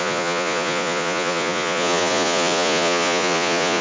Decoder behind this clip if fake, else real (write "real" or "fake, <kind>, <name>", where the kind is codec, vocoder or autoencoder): fake, vocoder, Vocos